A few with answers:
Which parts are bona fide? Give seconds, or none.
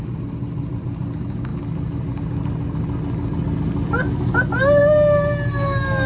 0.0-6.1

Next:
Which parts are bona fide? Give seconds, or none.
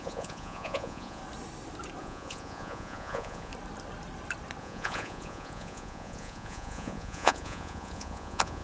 1.2-2.0; 3.5-4.6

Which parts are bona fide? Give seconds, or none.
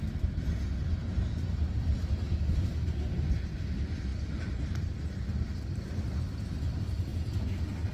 0.0-7.9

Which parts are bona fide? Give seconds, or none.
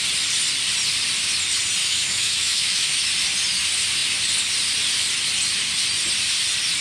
0.0-1.8; 3.1-6.8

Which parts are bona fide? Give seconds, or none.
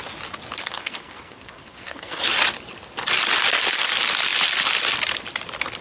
0.0-0.6; 2.2-5.8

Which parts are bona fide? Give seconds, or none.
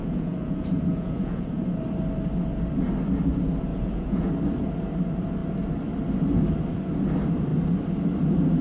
1.6-3.7; 4.3-8.6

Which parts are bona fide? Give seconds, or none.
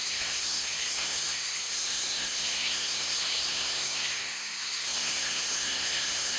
none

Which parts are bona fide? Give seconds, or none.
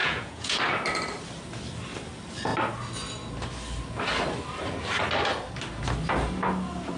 0.6-7.0